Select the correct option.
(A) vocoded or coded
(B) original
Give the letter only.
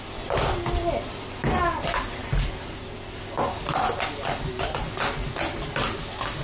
B